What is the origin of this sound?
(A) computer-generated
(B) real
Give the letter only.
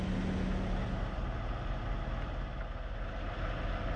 B